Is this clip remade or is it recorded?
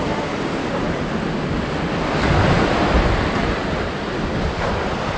recorded